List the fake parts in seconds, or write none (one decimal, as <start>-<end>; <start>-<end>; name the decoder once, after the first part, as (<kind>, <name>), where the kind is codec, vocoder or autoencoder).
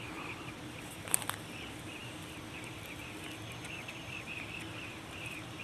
none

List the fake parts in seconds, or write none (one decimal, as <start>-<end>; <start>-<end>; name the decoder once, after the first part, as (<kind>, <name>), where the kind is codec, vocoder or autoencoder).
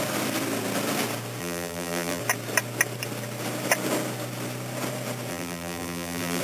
1.4-2.2 (vocoder, BigVGAN v2); 5.3-6.4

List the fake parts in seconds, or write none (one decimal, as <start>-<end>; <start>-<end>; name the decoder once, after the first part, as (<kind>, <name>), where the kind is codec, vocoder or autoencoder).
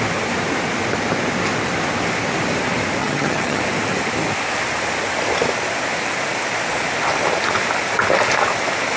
3.0-3.6 (vocoder, HiFi-GAN)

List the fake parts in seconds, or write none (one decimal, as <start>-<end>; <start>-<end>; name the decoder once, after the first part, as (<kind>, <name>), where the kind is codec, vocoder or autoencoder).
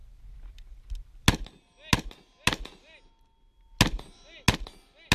none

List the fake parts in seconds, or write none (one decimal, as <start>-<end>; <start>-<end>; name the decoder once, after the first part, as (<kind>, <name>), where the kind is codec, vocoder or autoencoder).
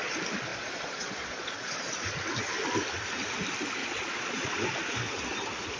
0.5-1.9 (vocoder, Vocos); 3.8-4.5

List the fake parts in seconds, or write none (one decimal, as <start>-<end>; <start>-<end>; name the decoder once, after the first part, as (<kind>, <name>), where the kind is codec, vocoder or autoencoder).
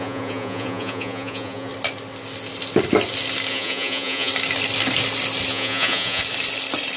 0.0-1.7 (vocoder, Vocos); 3.5-4.3; 5.5-6.2